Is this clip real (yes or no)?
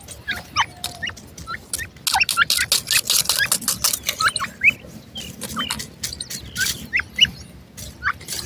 yes